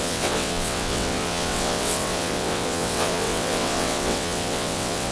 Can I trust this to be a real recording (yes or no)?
no